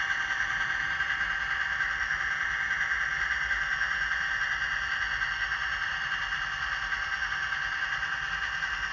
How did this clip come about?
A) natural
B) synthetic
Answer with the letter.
A